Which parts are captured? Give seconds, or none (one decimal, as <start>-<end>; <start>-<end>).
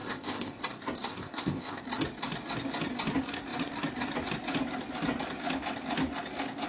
0.6-1.1; 1.8-6.7